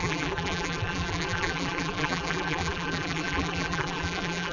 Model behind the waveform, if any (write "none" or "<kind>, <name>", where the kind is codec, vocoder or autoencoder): vocoder, BigVGAN v2